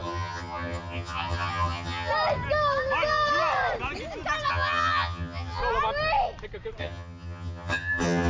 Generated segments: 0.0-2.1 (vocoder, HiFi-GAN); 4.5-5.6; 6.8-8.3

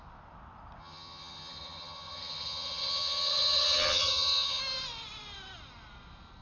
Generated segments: 0.8-4.6 (vocoder, HiFi-GAN)

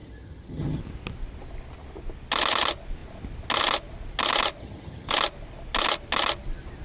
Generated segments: 0.0-0.8 (vocoder, HiFi-GAN); 4.6-5.1

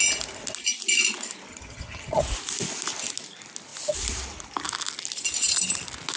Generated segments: 1.5-2.2 (vocoder, HiFi-GAN)